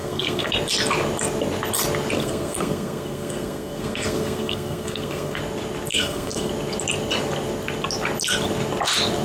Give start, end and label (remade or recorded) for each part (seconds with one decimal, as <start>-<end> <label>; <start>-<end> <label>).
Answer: 0.0-0.5 remade; 0.5-2.2 recorded; 2.2-5.4 remade; 5.4-5.9 recorded; 5.9-6.5 remade; 6.5-9.2 recorded